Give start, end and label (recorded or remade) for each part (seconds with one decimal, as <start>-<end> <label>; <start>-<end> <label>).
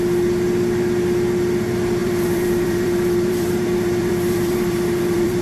0.0-2.0 recorded; 2.0-5.4 remade